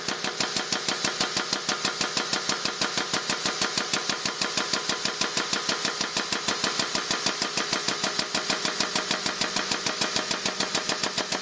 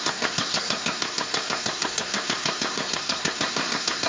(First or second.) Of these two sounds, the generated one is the second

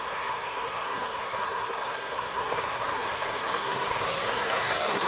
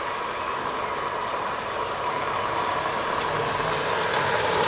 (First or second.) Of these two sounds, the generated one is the first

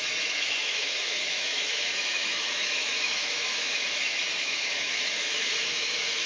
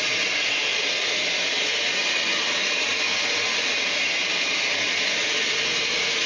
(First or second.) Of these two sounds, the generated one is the first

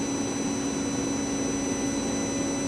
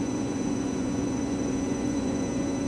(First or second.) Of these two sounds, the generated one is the second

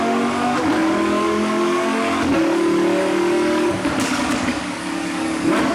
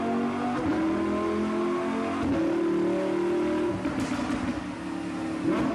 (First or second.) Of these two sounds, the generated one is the first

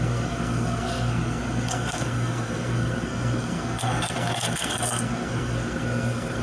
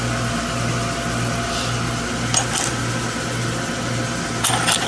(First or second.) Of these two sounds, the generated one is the first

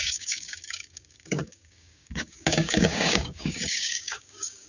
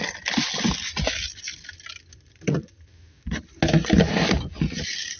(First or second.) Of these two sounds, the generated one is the first